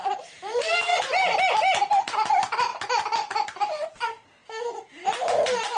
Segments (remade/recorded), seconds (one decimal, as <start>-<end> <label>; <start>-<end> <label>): 0.0-0.9 remade; 0.9-2.0 recorded; 2.0-2.7 remade; 2.7-3.3 recorded; 3.3-5.8 remade